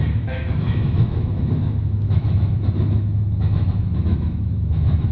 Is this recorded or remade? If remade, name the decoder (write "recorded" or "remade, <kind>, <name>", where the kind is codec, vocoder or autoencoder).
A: remade, autoencoder, DAC-VAE